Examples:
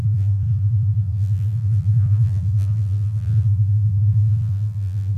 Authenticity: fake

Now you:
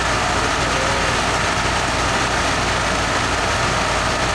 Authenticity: real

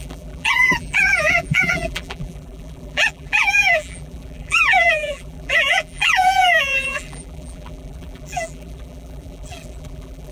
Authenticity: fake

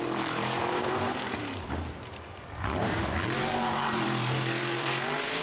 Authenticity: fake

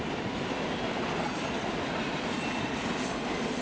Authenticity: real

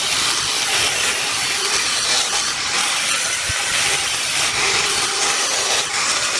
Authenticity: fake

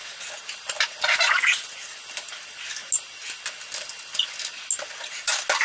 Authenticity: real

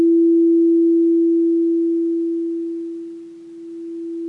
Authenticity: real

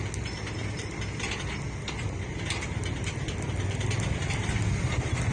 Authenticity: real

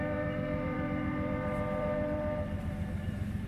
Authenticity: fake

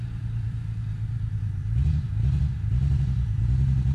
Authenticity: fake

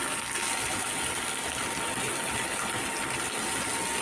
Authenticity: real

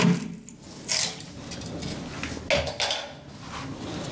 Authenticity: real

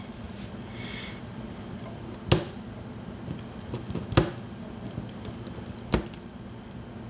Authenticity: real